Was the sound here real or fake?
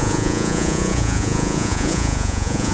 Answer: fake